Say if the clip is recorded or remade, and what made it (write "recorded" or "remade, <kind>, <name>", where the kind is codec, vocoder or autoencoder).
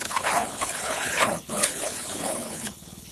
remade, codec, HILCodec